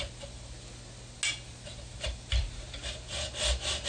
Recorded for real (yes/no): yes